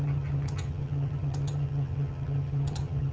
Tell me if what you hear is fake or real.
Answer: fake